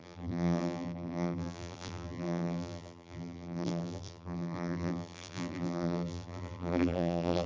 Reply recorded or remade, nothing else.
remade